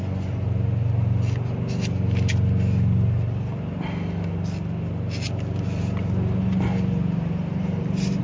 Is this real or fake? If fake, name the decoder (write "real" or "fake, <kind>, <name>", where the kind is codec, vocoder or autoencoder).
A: real